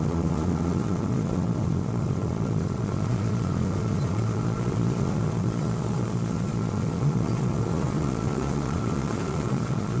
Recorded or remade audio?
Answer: remade